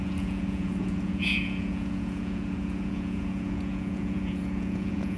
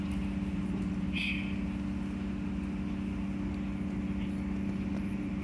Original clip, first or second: second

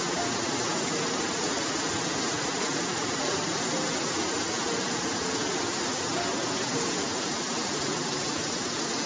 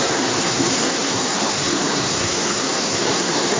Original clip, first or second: first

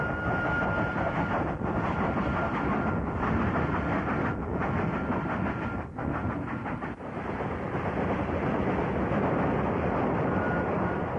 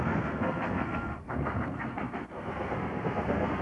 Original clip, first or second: first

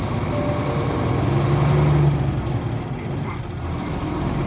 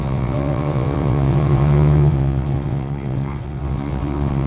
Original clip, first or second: first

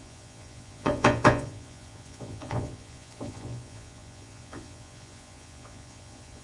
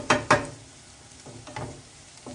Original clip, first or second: second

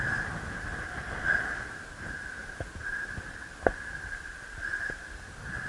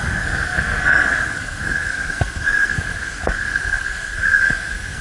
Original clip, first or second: first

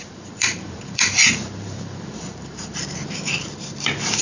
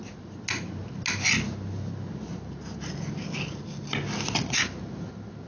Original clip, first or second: second